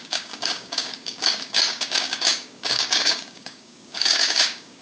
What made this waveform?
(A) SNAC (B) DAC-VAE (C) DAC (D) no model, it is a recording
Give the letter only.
C